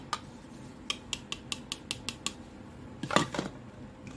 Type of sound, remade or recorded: recorded